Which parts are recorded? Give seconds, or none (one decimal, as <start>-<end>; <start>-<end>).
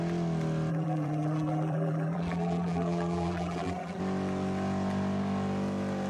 0.0-0.7; 4.0-6.1